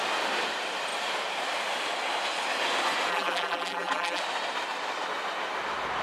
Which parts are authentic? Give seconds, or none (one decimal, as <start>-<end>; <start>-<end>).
0.0-3.1; 4.2-6.0